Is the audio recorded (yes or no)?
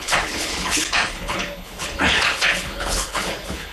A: no